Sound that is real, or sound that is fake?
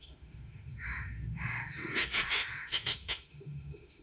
fake